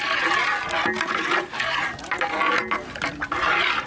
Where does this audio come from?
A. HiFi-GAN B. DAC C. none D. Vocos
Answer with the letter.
C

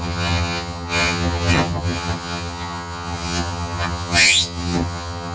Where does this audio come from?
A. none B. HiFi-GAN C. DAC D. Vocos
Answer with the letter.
B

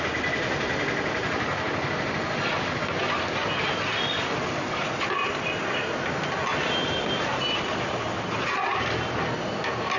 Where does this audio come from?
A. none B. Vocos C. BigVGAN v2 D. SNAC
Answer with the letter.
A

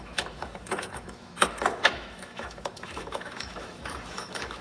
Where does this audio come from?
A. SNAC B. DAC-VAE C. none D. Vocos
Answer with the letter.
B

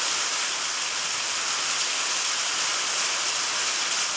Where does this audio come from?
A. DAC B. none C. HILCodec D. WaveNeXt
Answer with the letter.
B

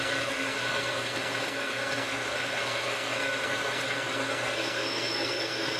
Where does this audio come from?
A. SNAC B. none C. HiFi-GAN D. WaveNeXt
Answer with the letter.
A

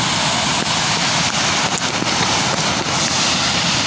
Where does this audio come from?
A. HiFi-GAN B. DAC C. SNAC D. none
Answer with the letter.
D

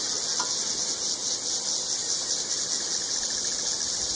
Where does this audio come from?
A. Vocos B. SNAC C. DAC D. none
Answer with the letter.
D